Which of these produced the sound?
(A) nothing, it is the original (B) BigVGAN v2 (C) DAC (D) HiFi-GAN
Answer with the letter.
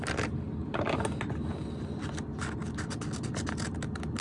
A